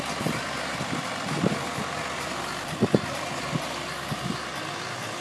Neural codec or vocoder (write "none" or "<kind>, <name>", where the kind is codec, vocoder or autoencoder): none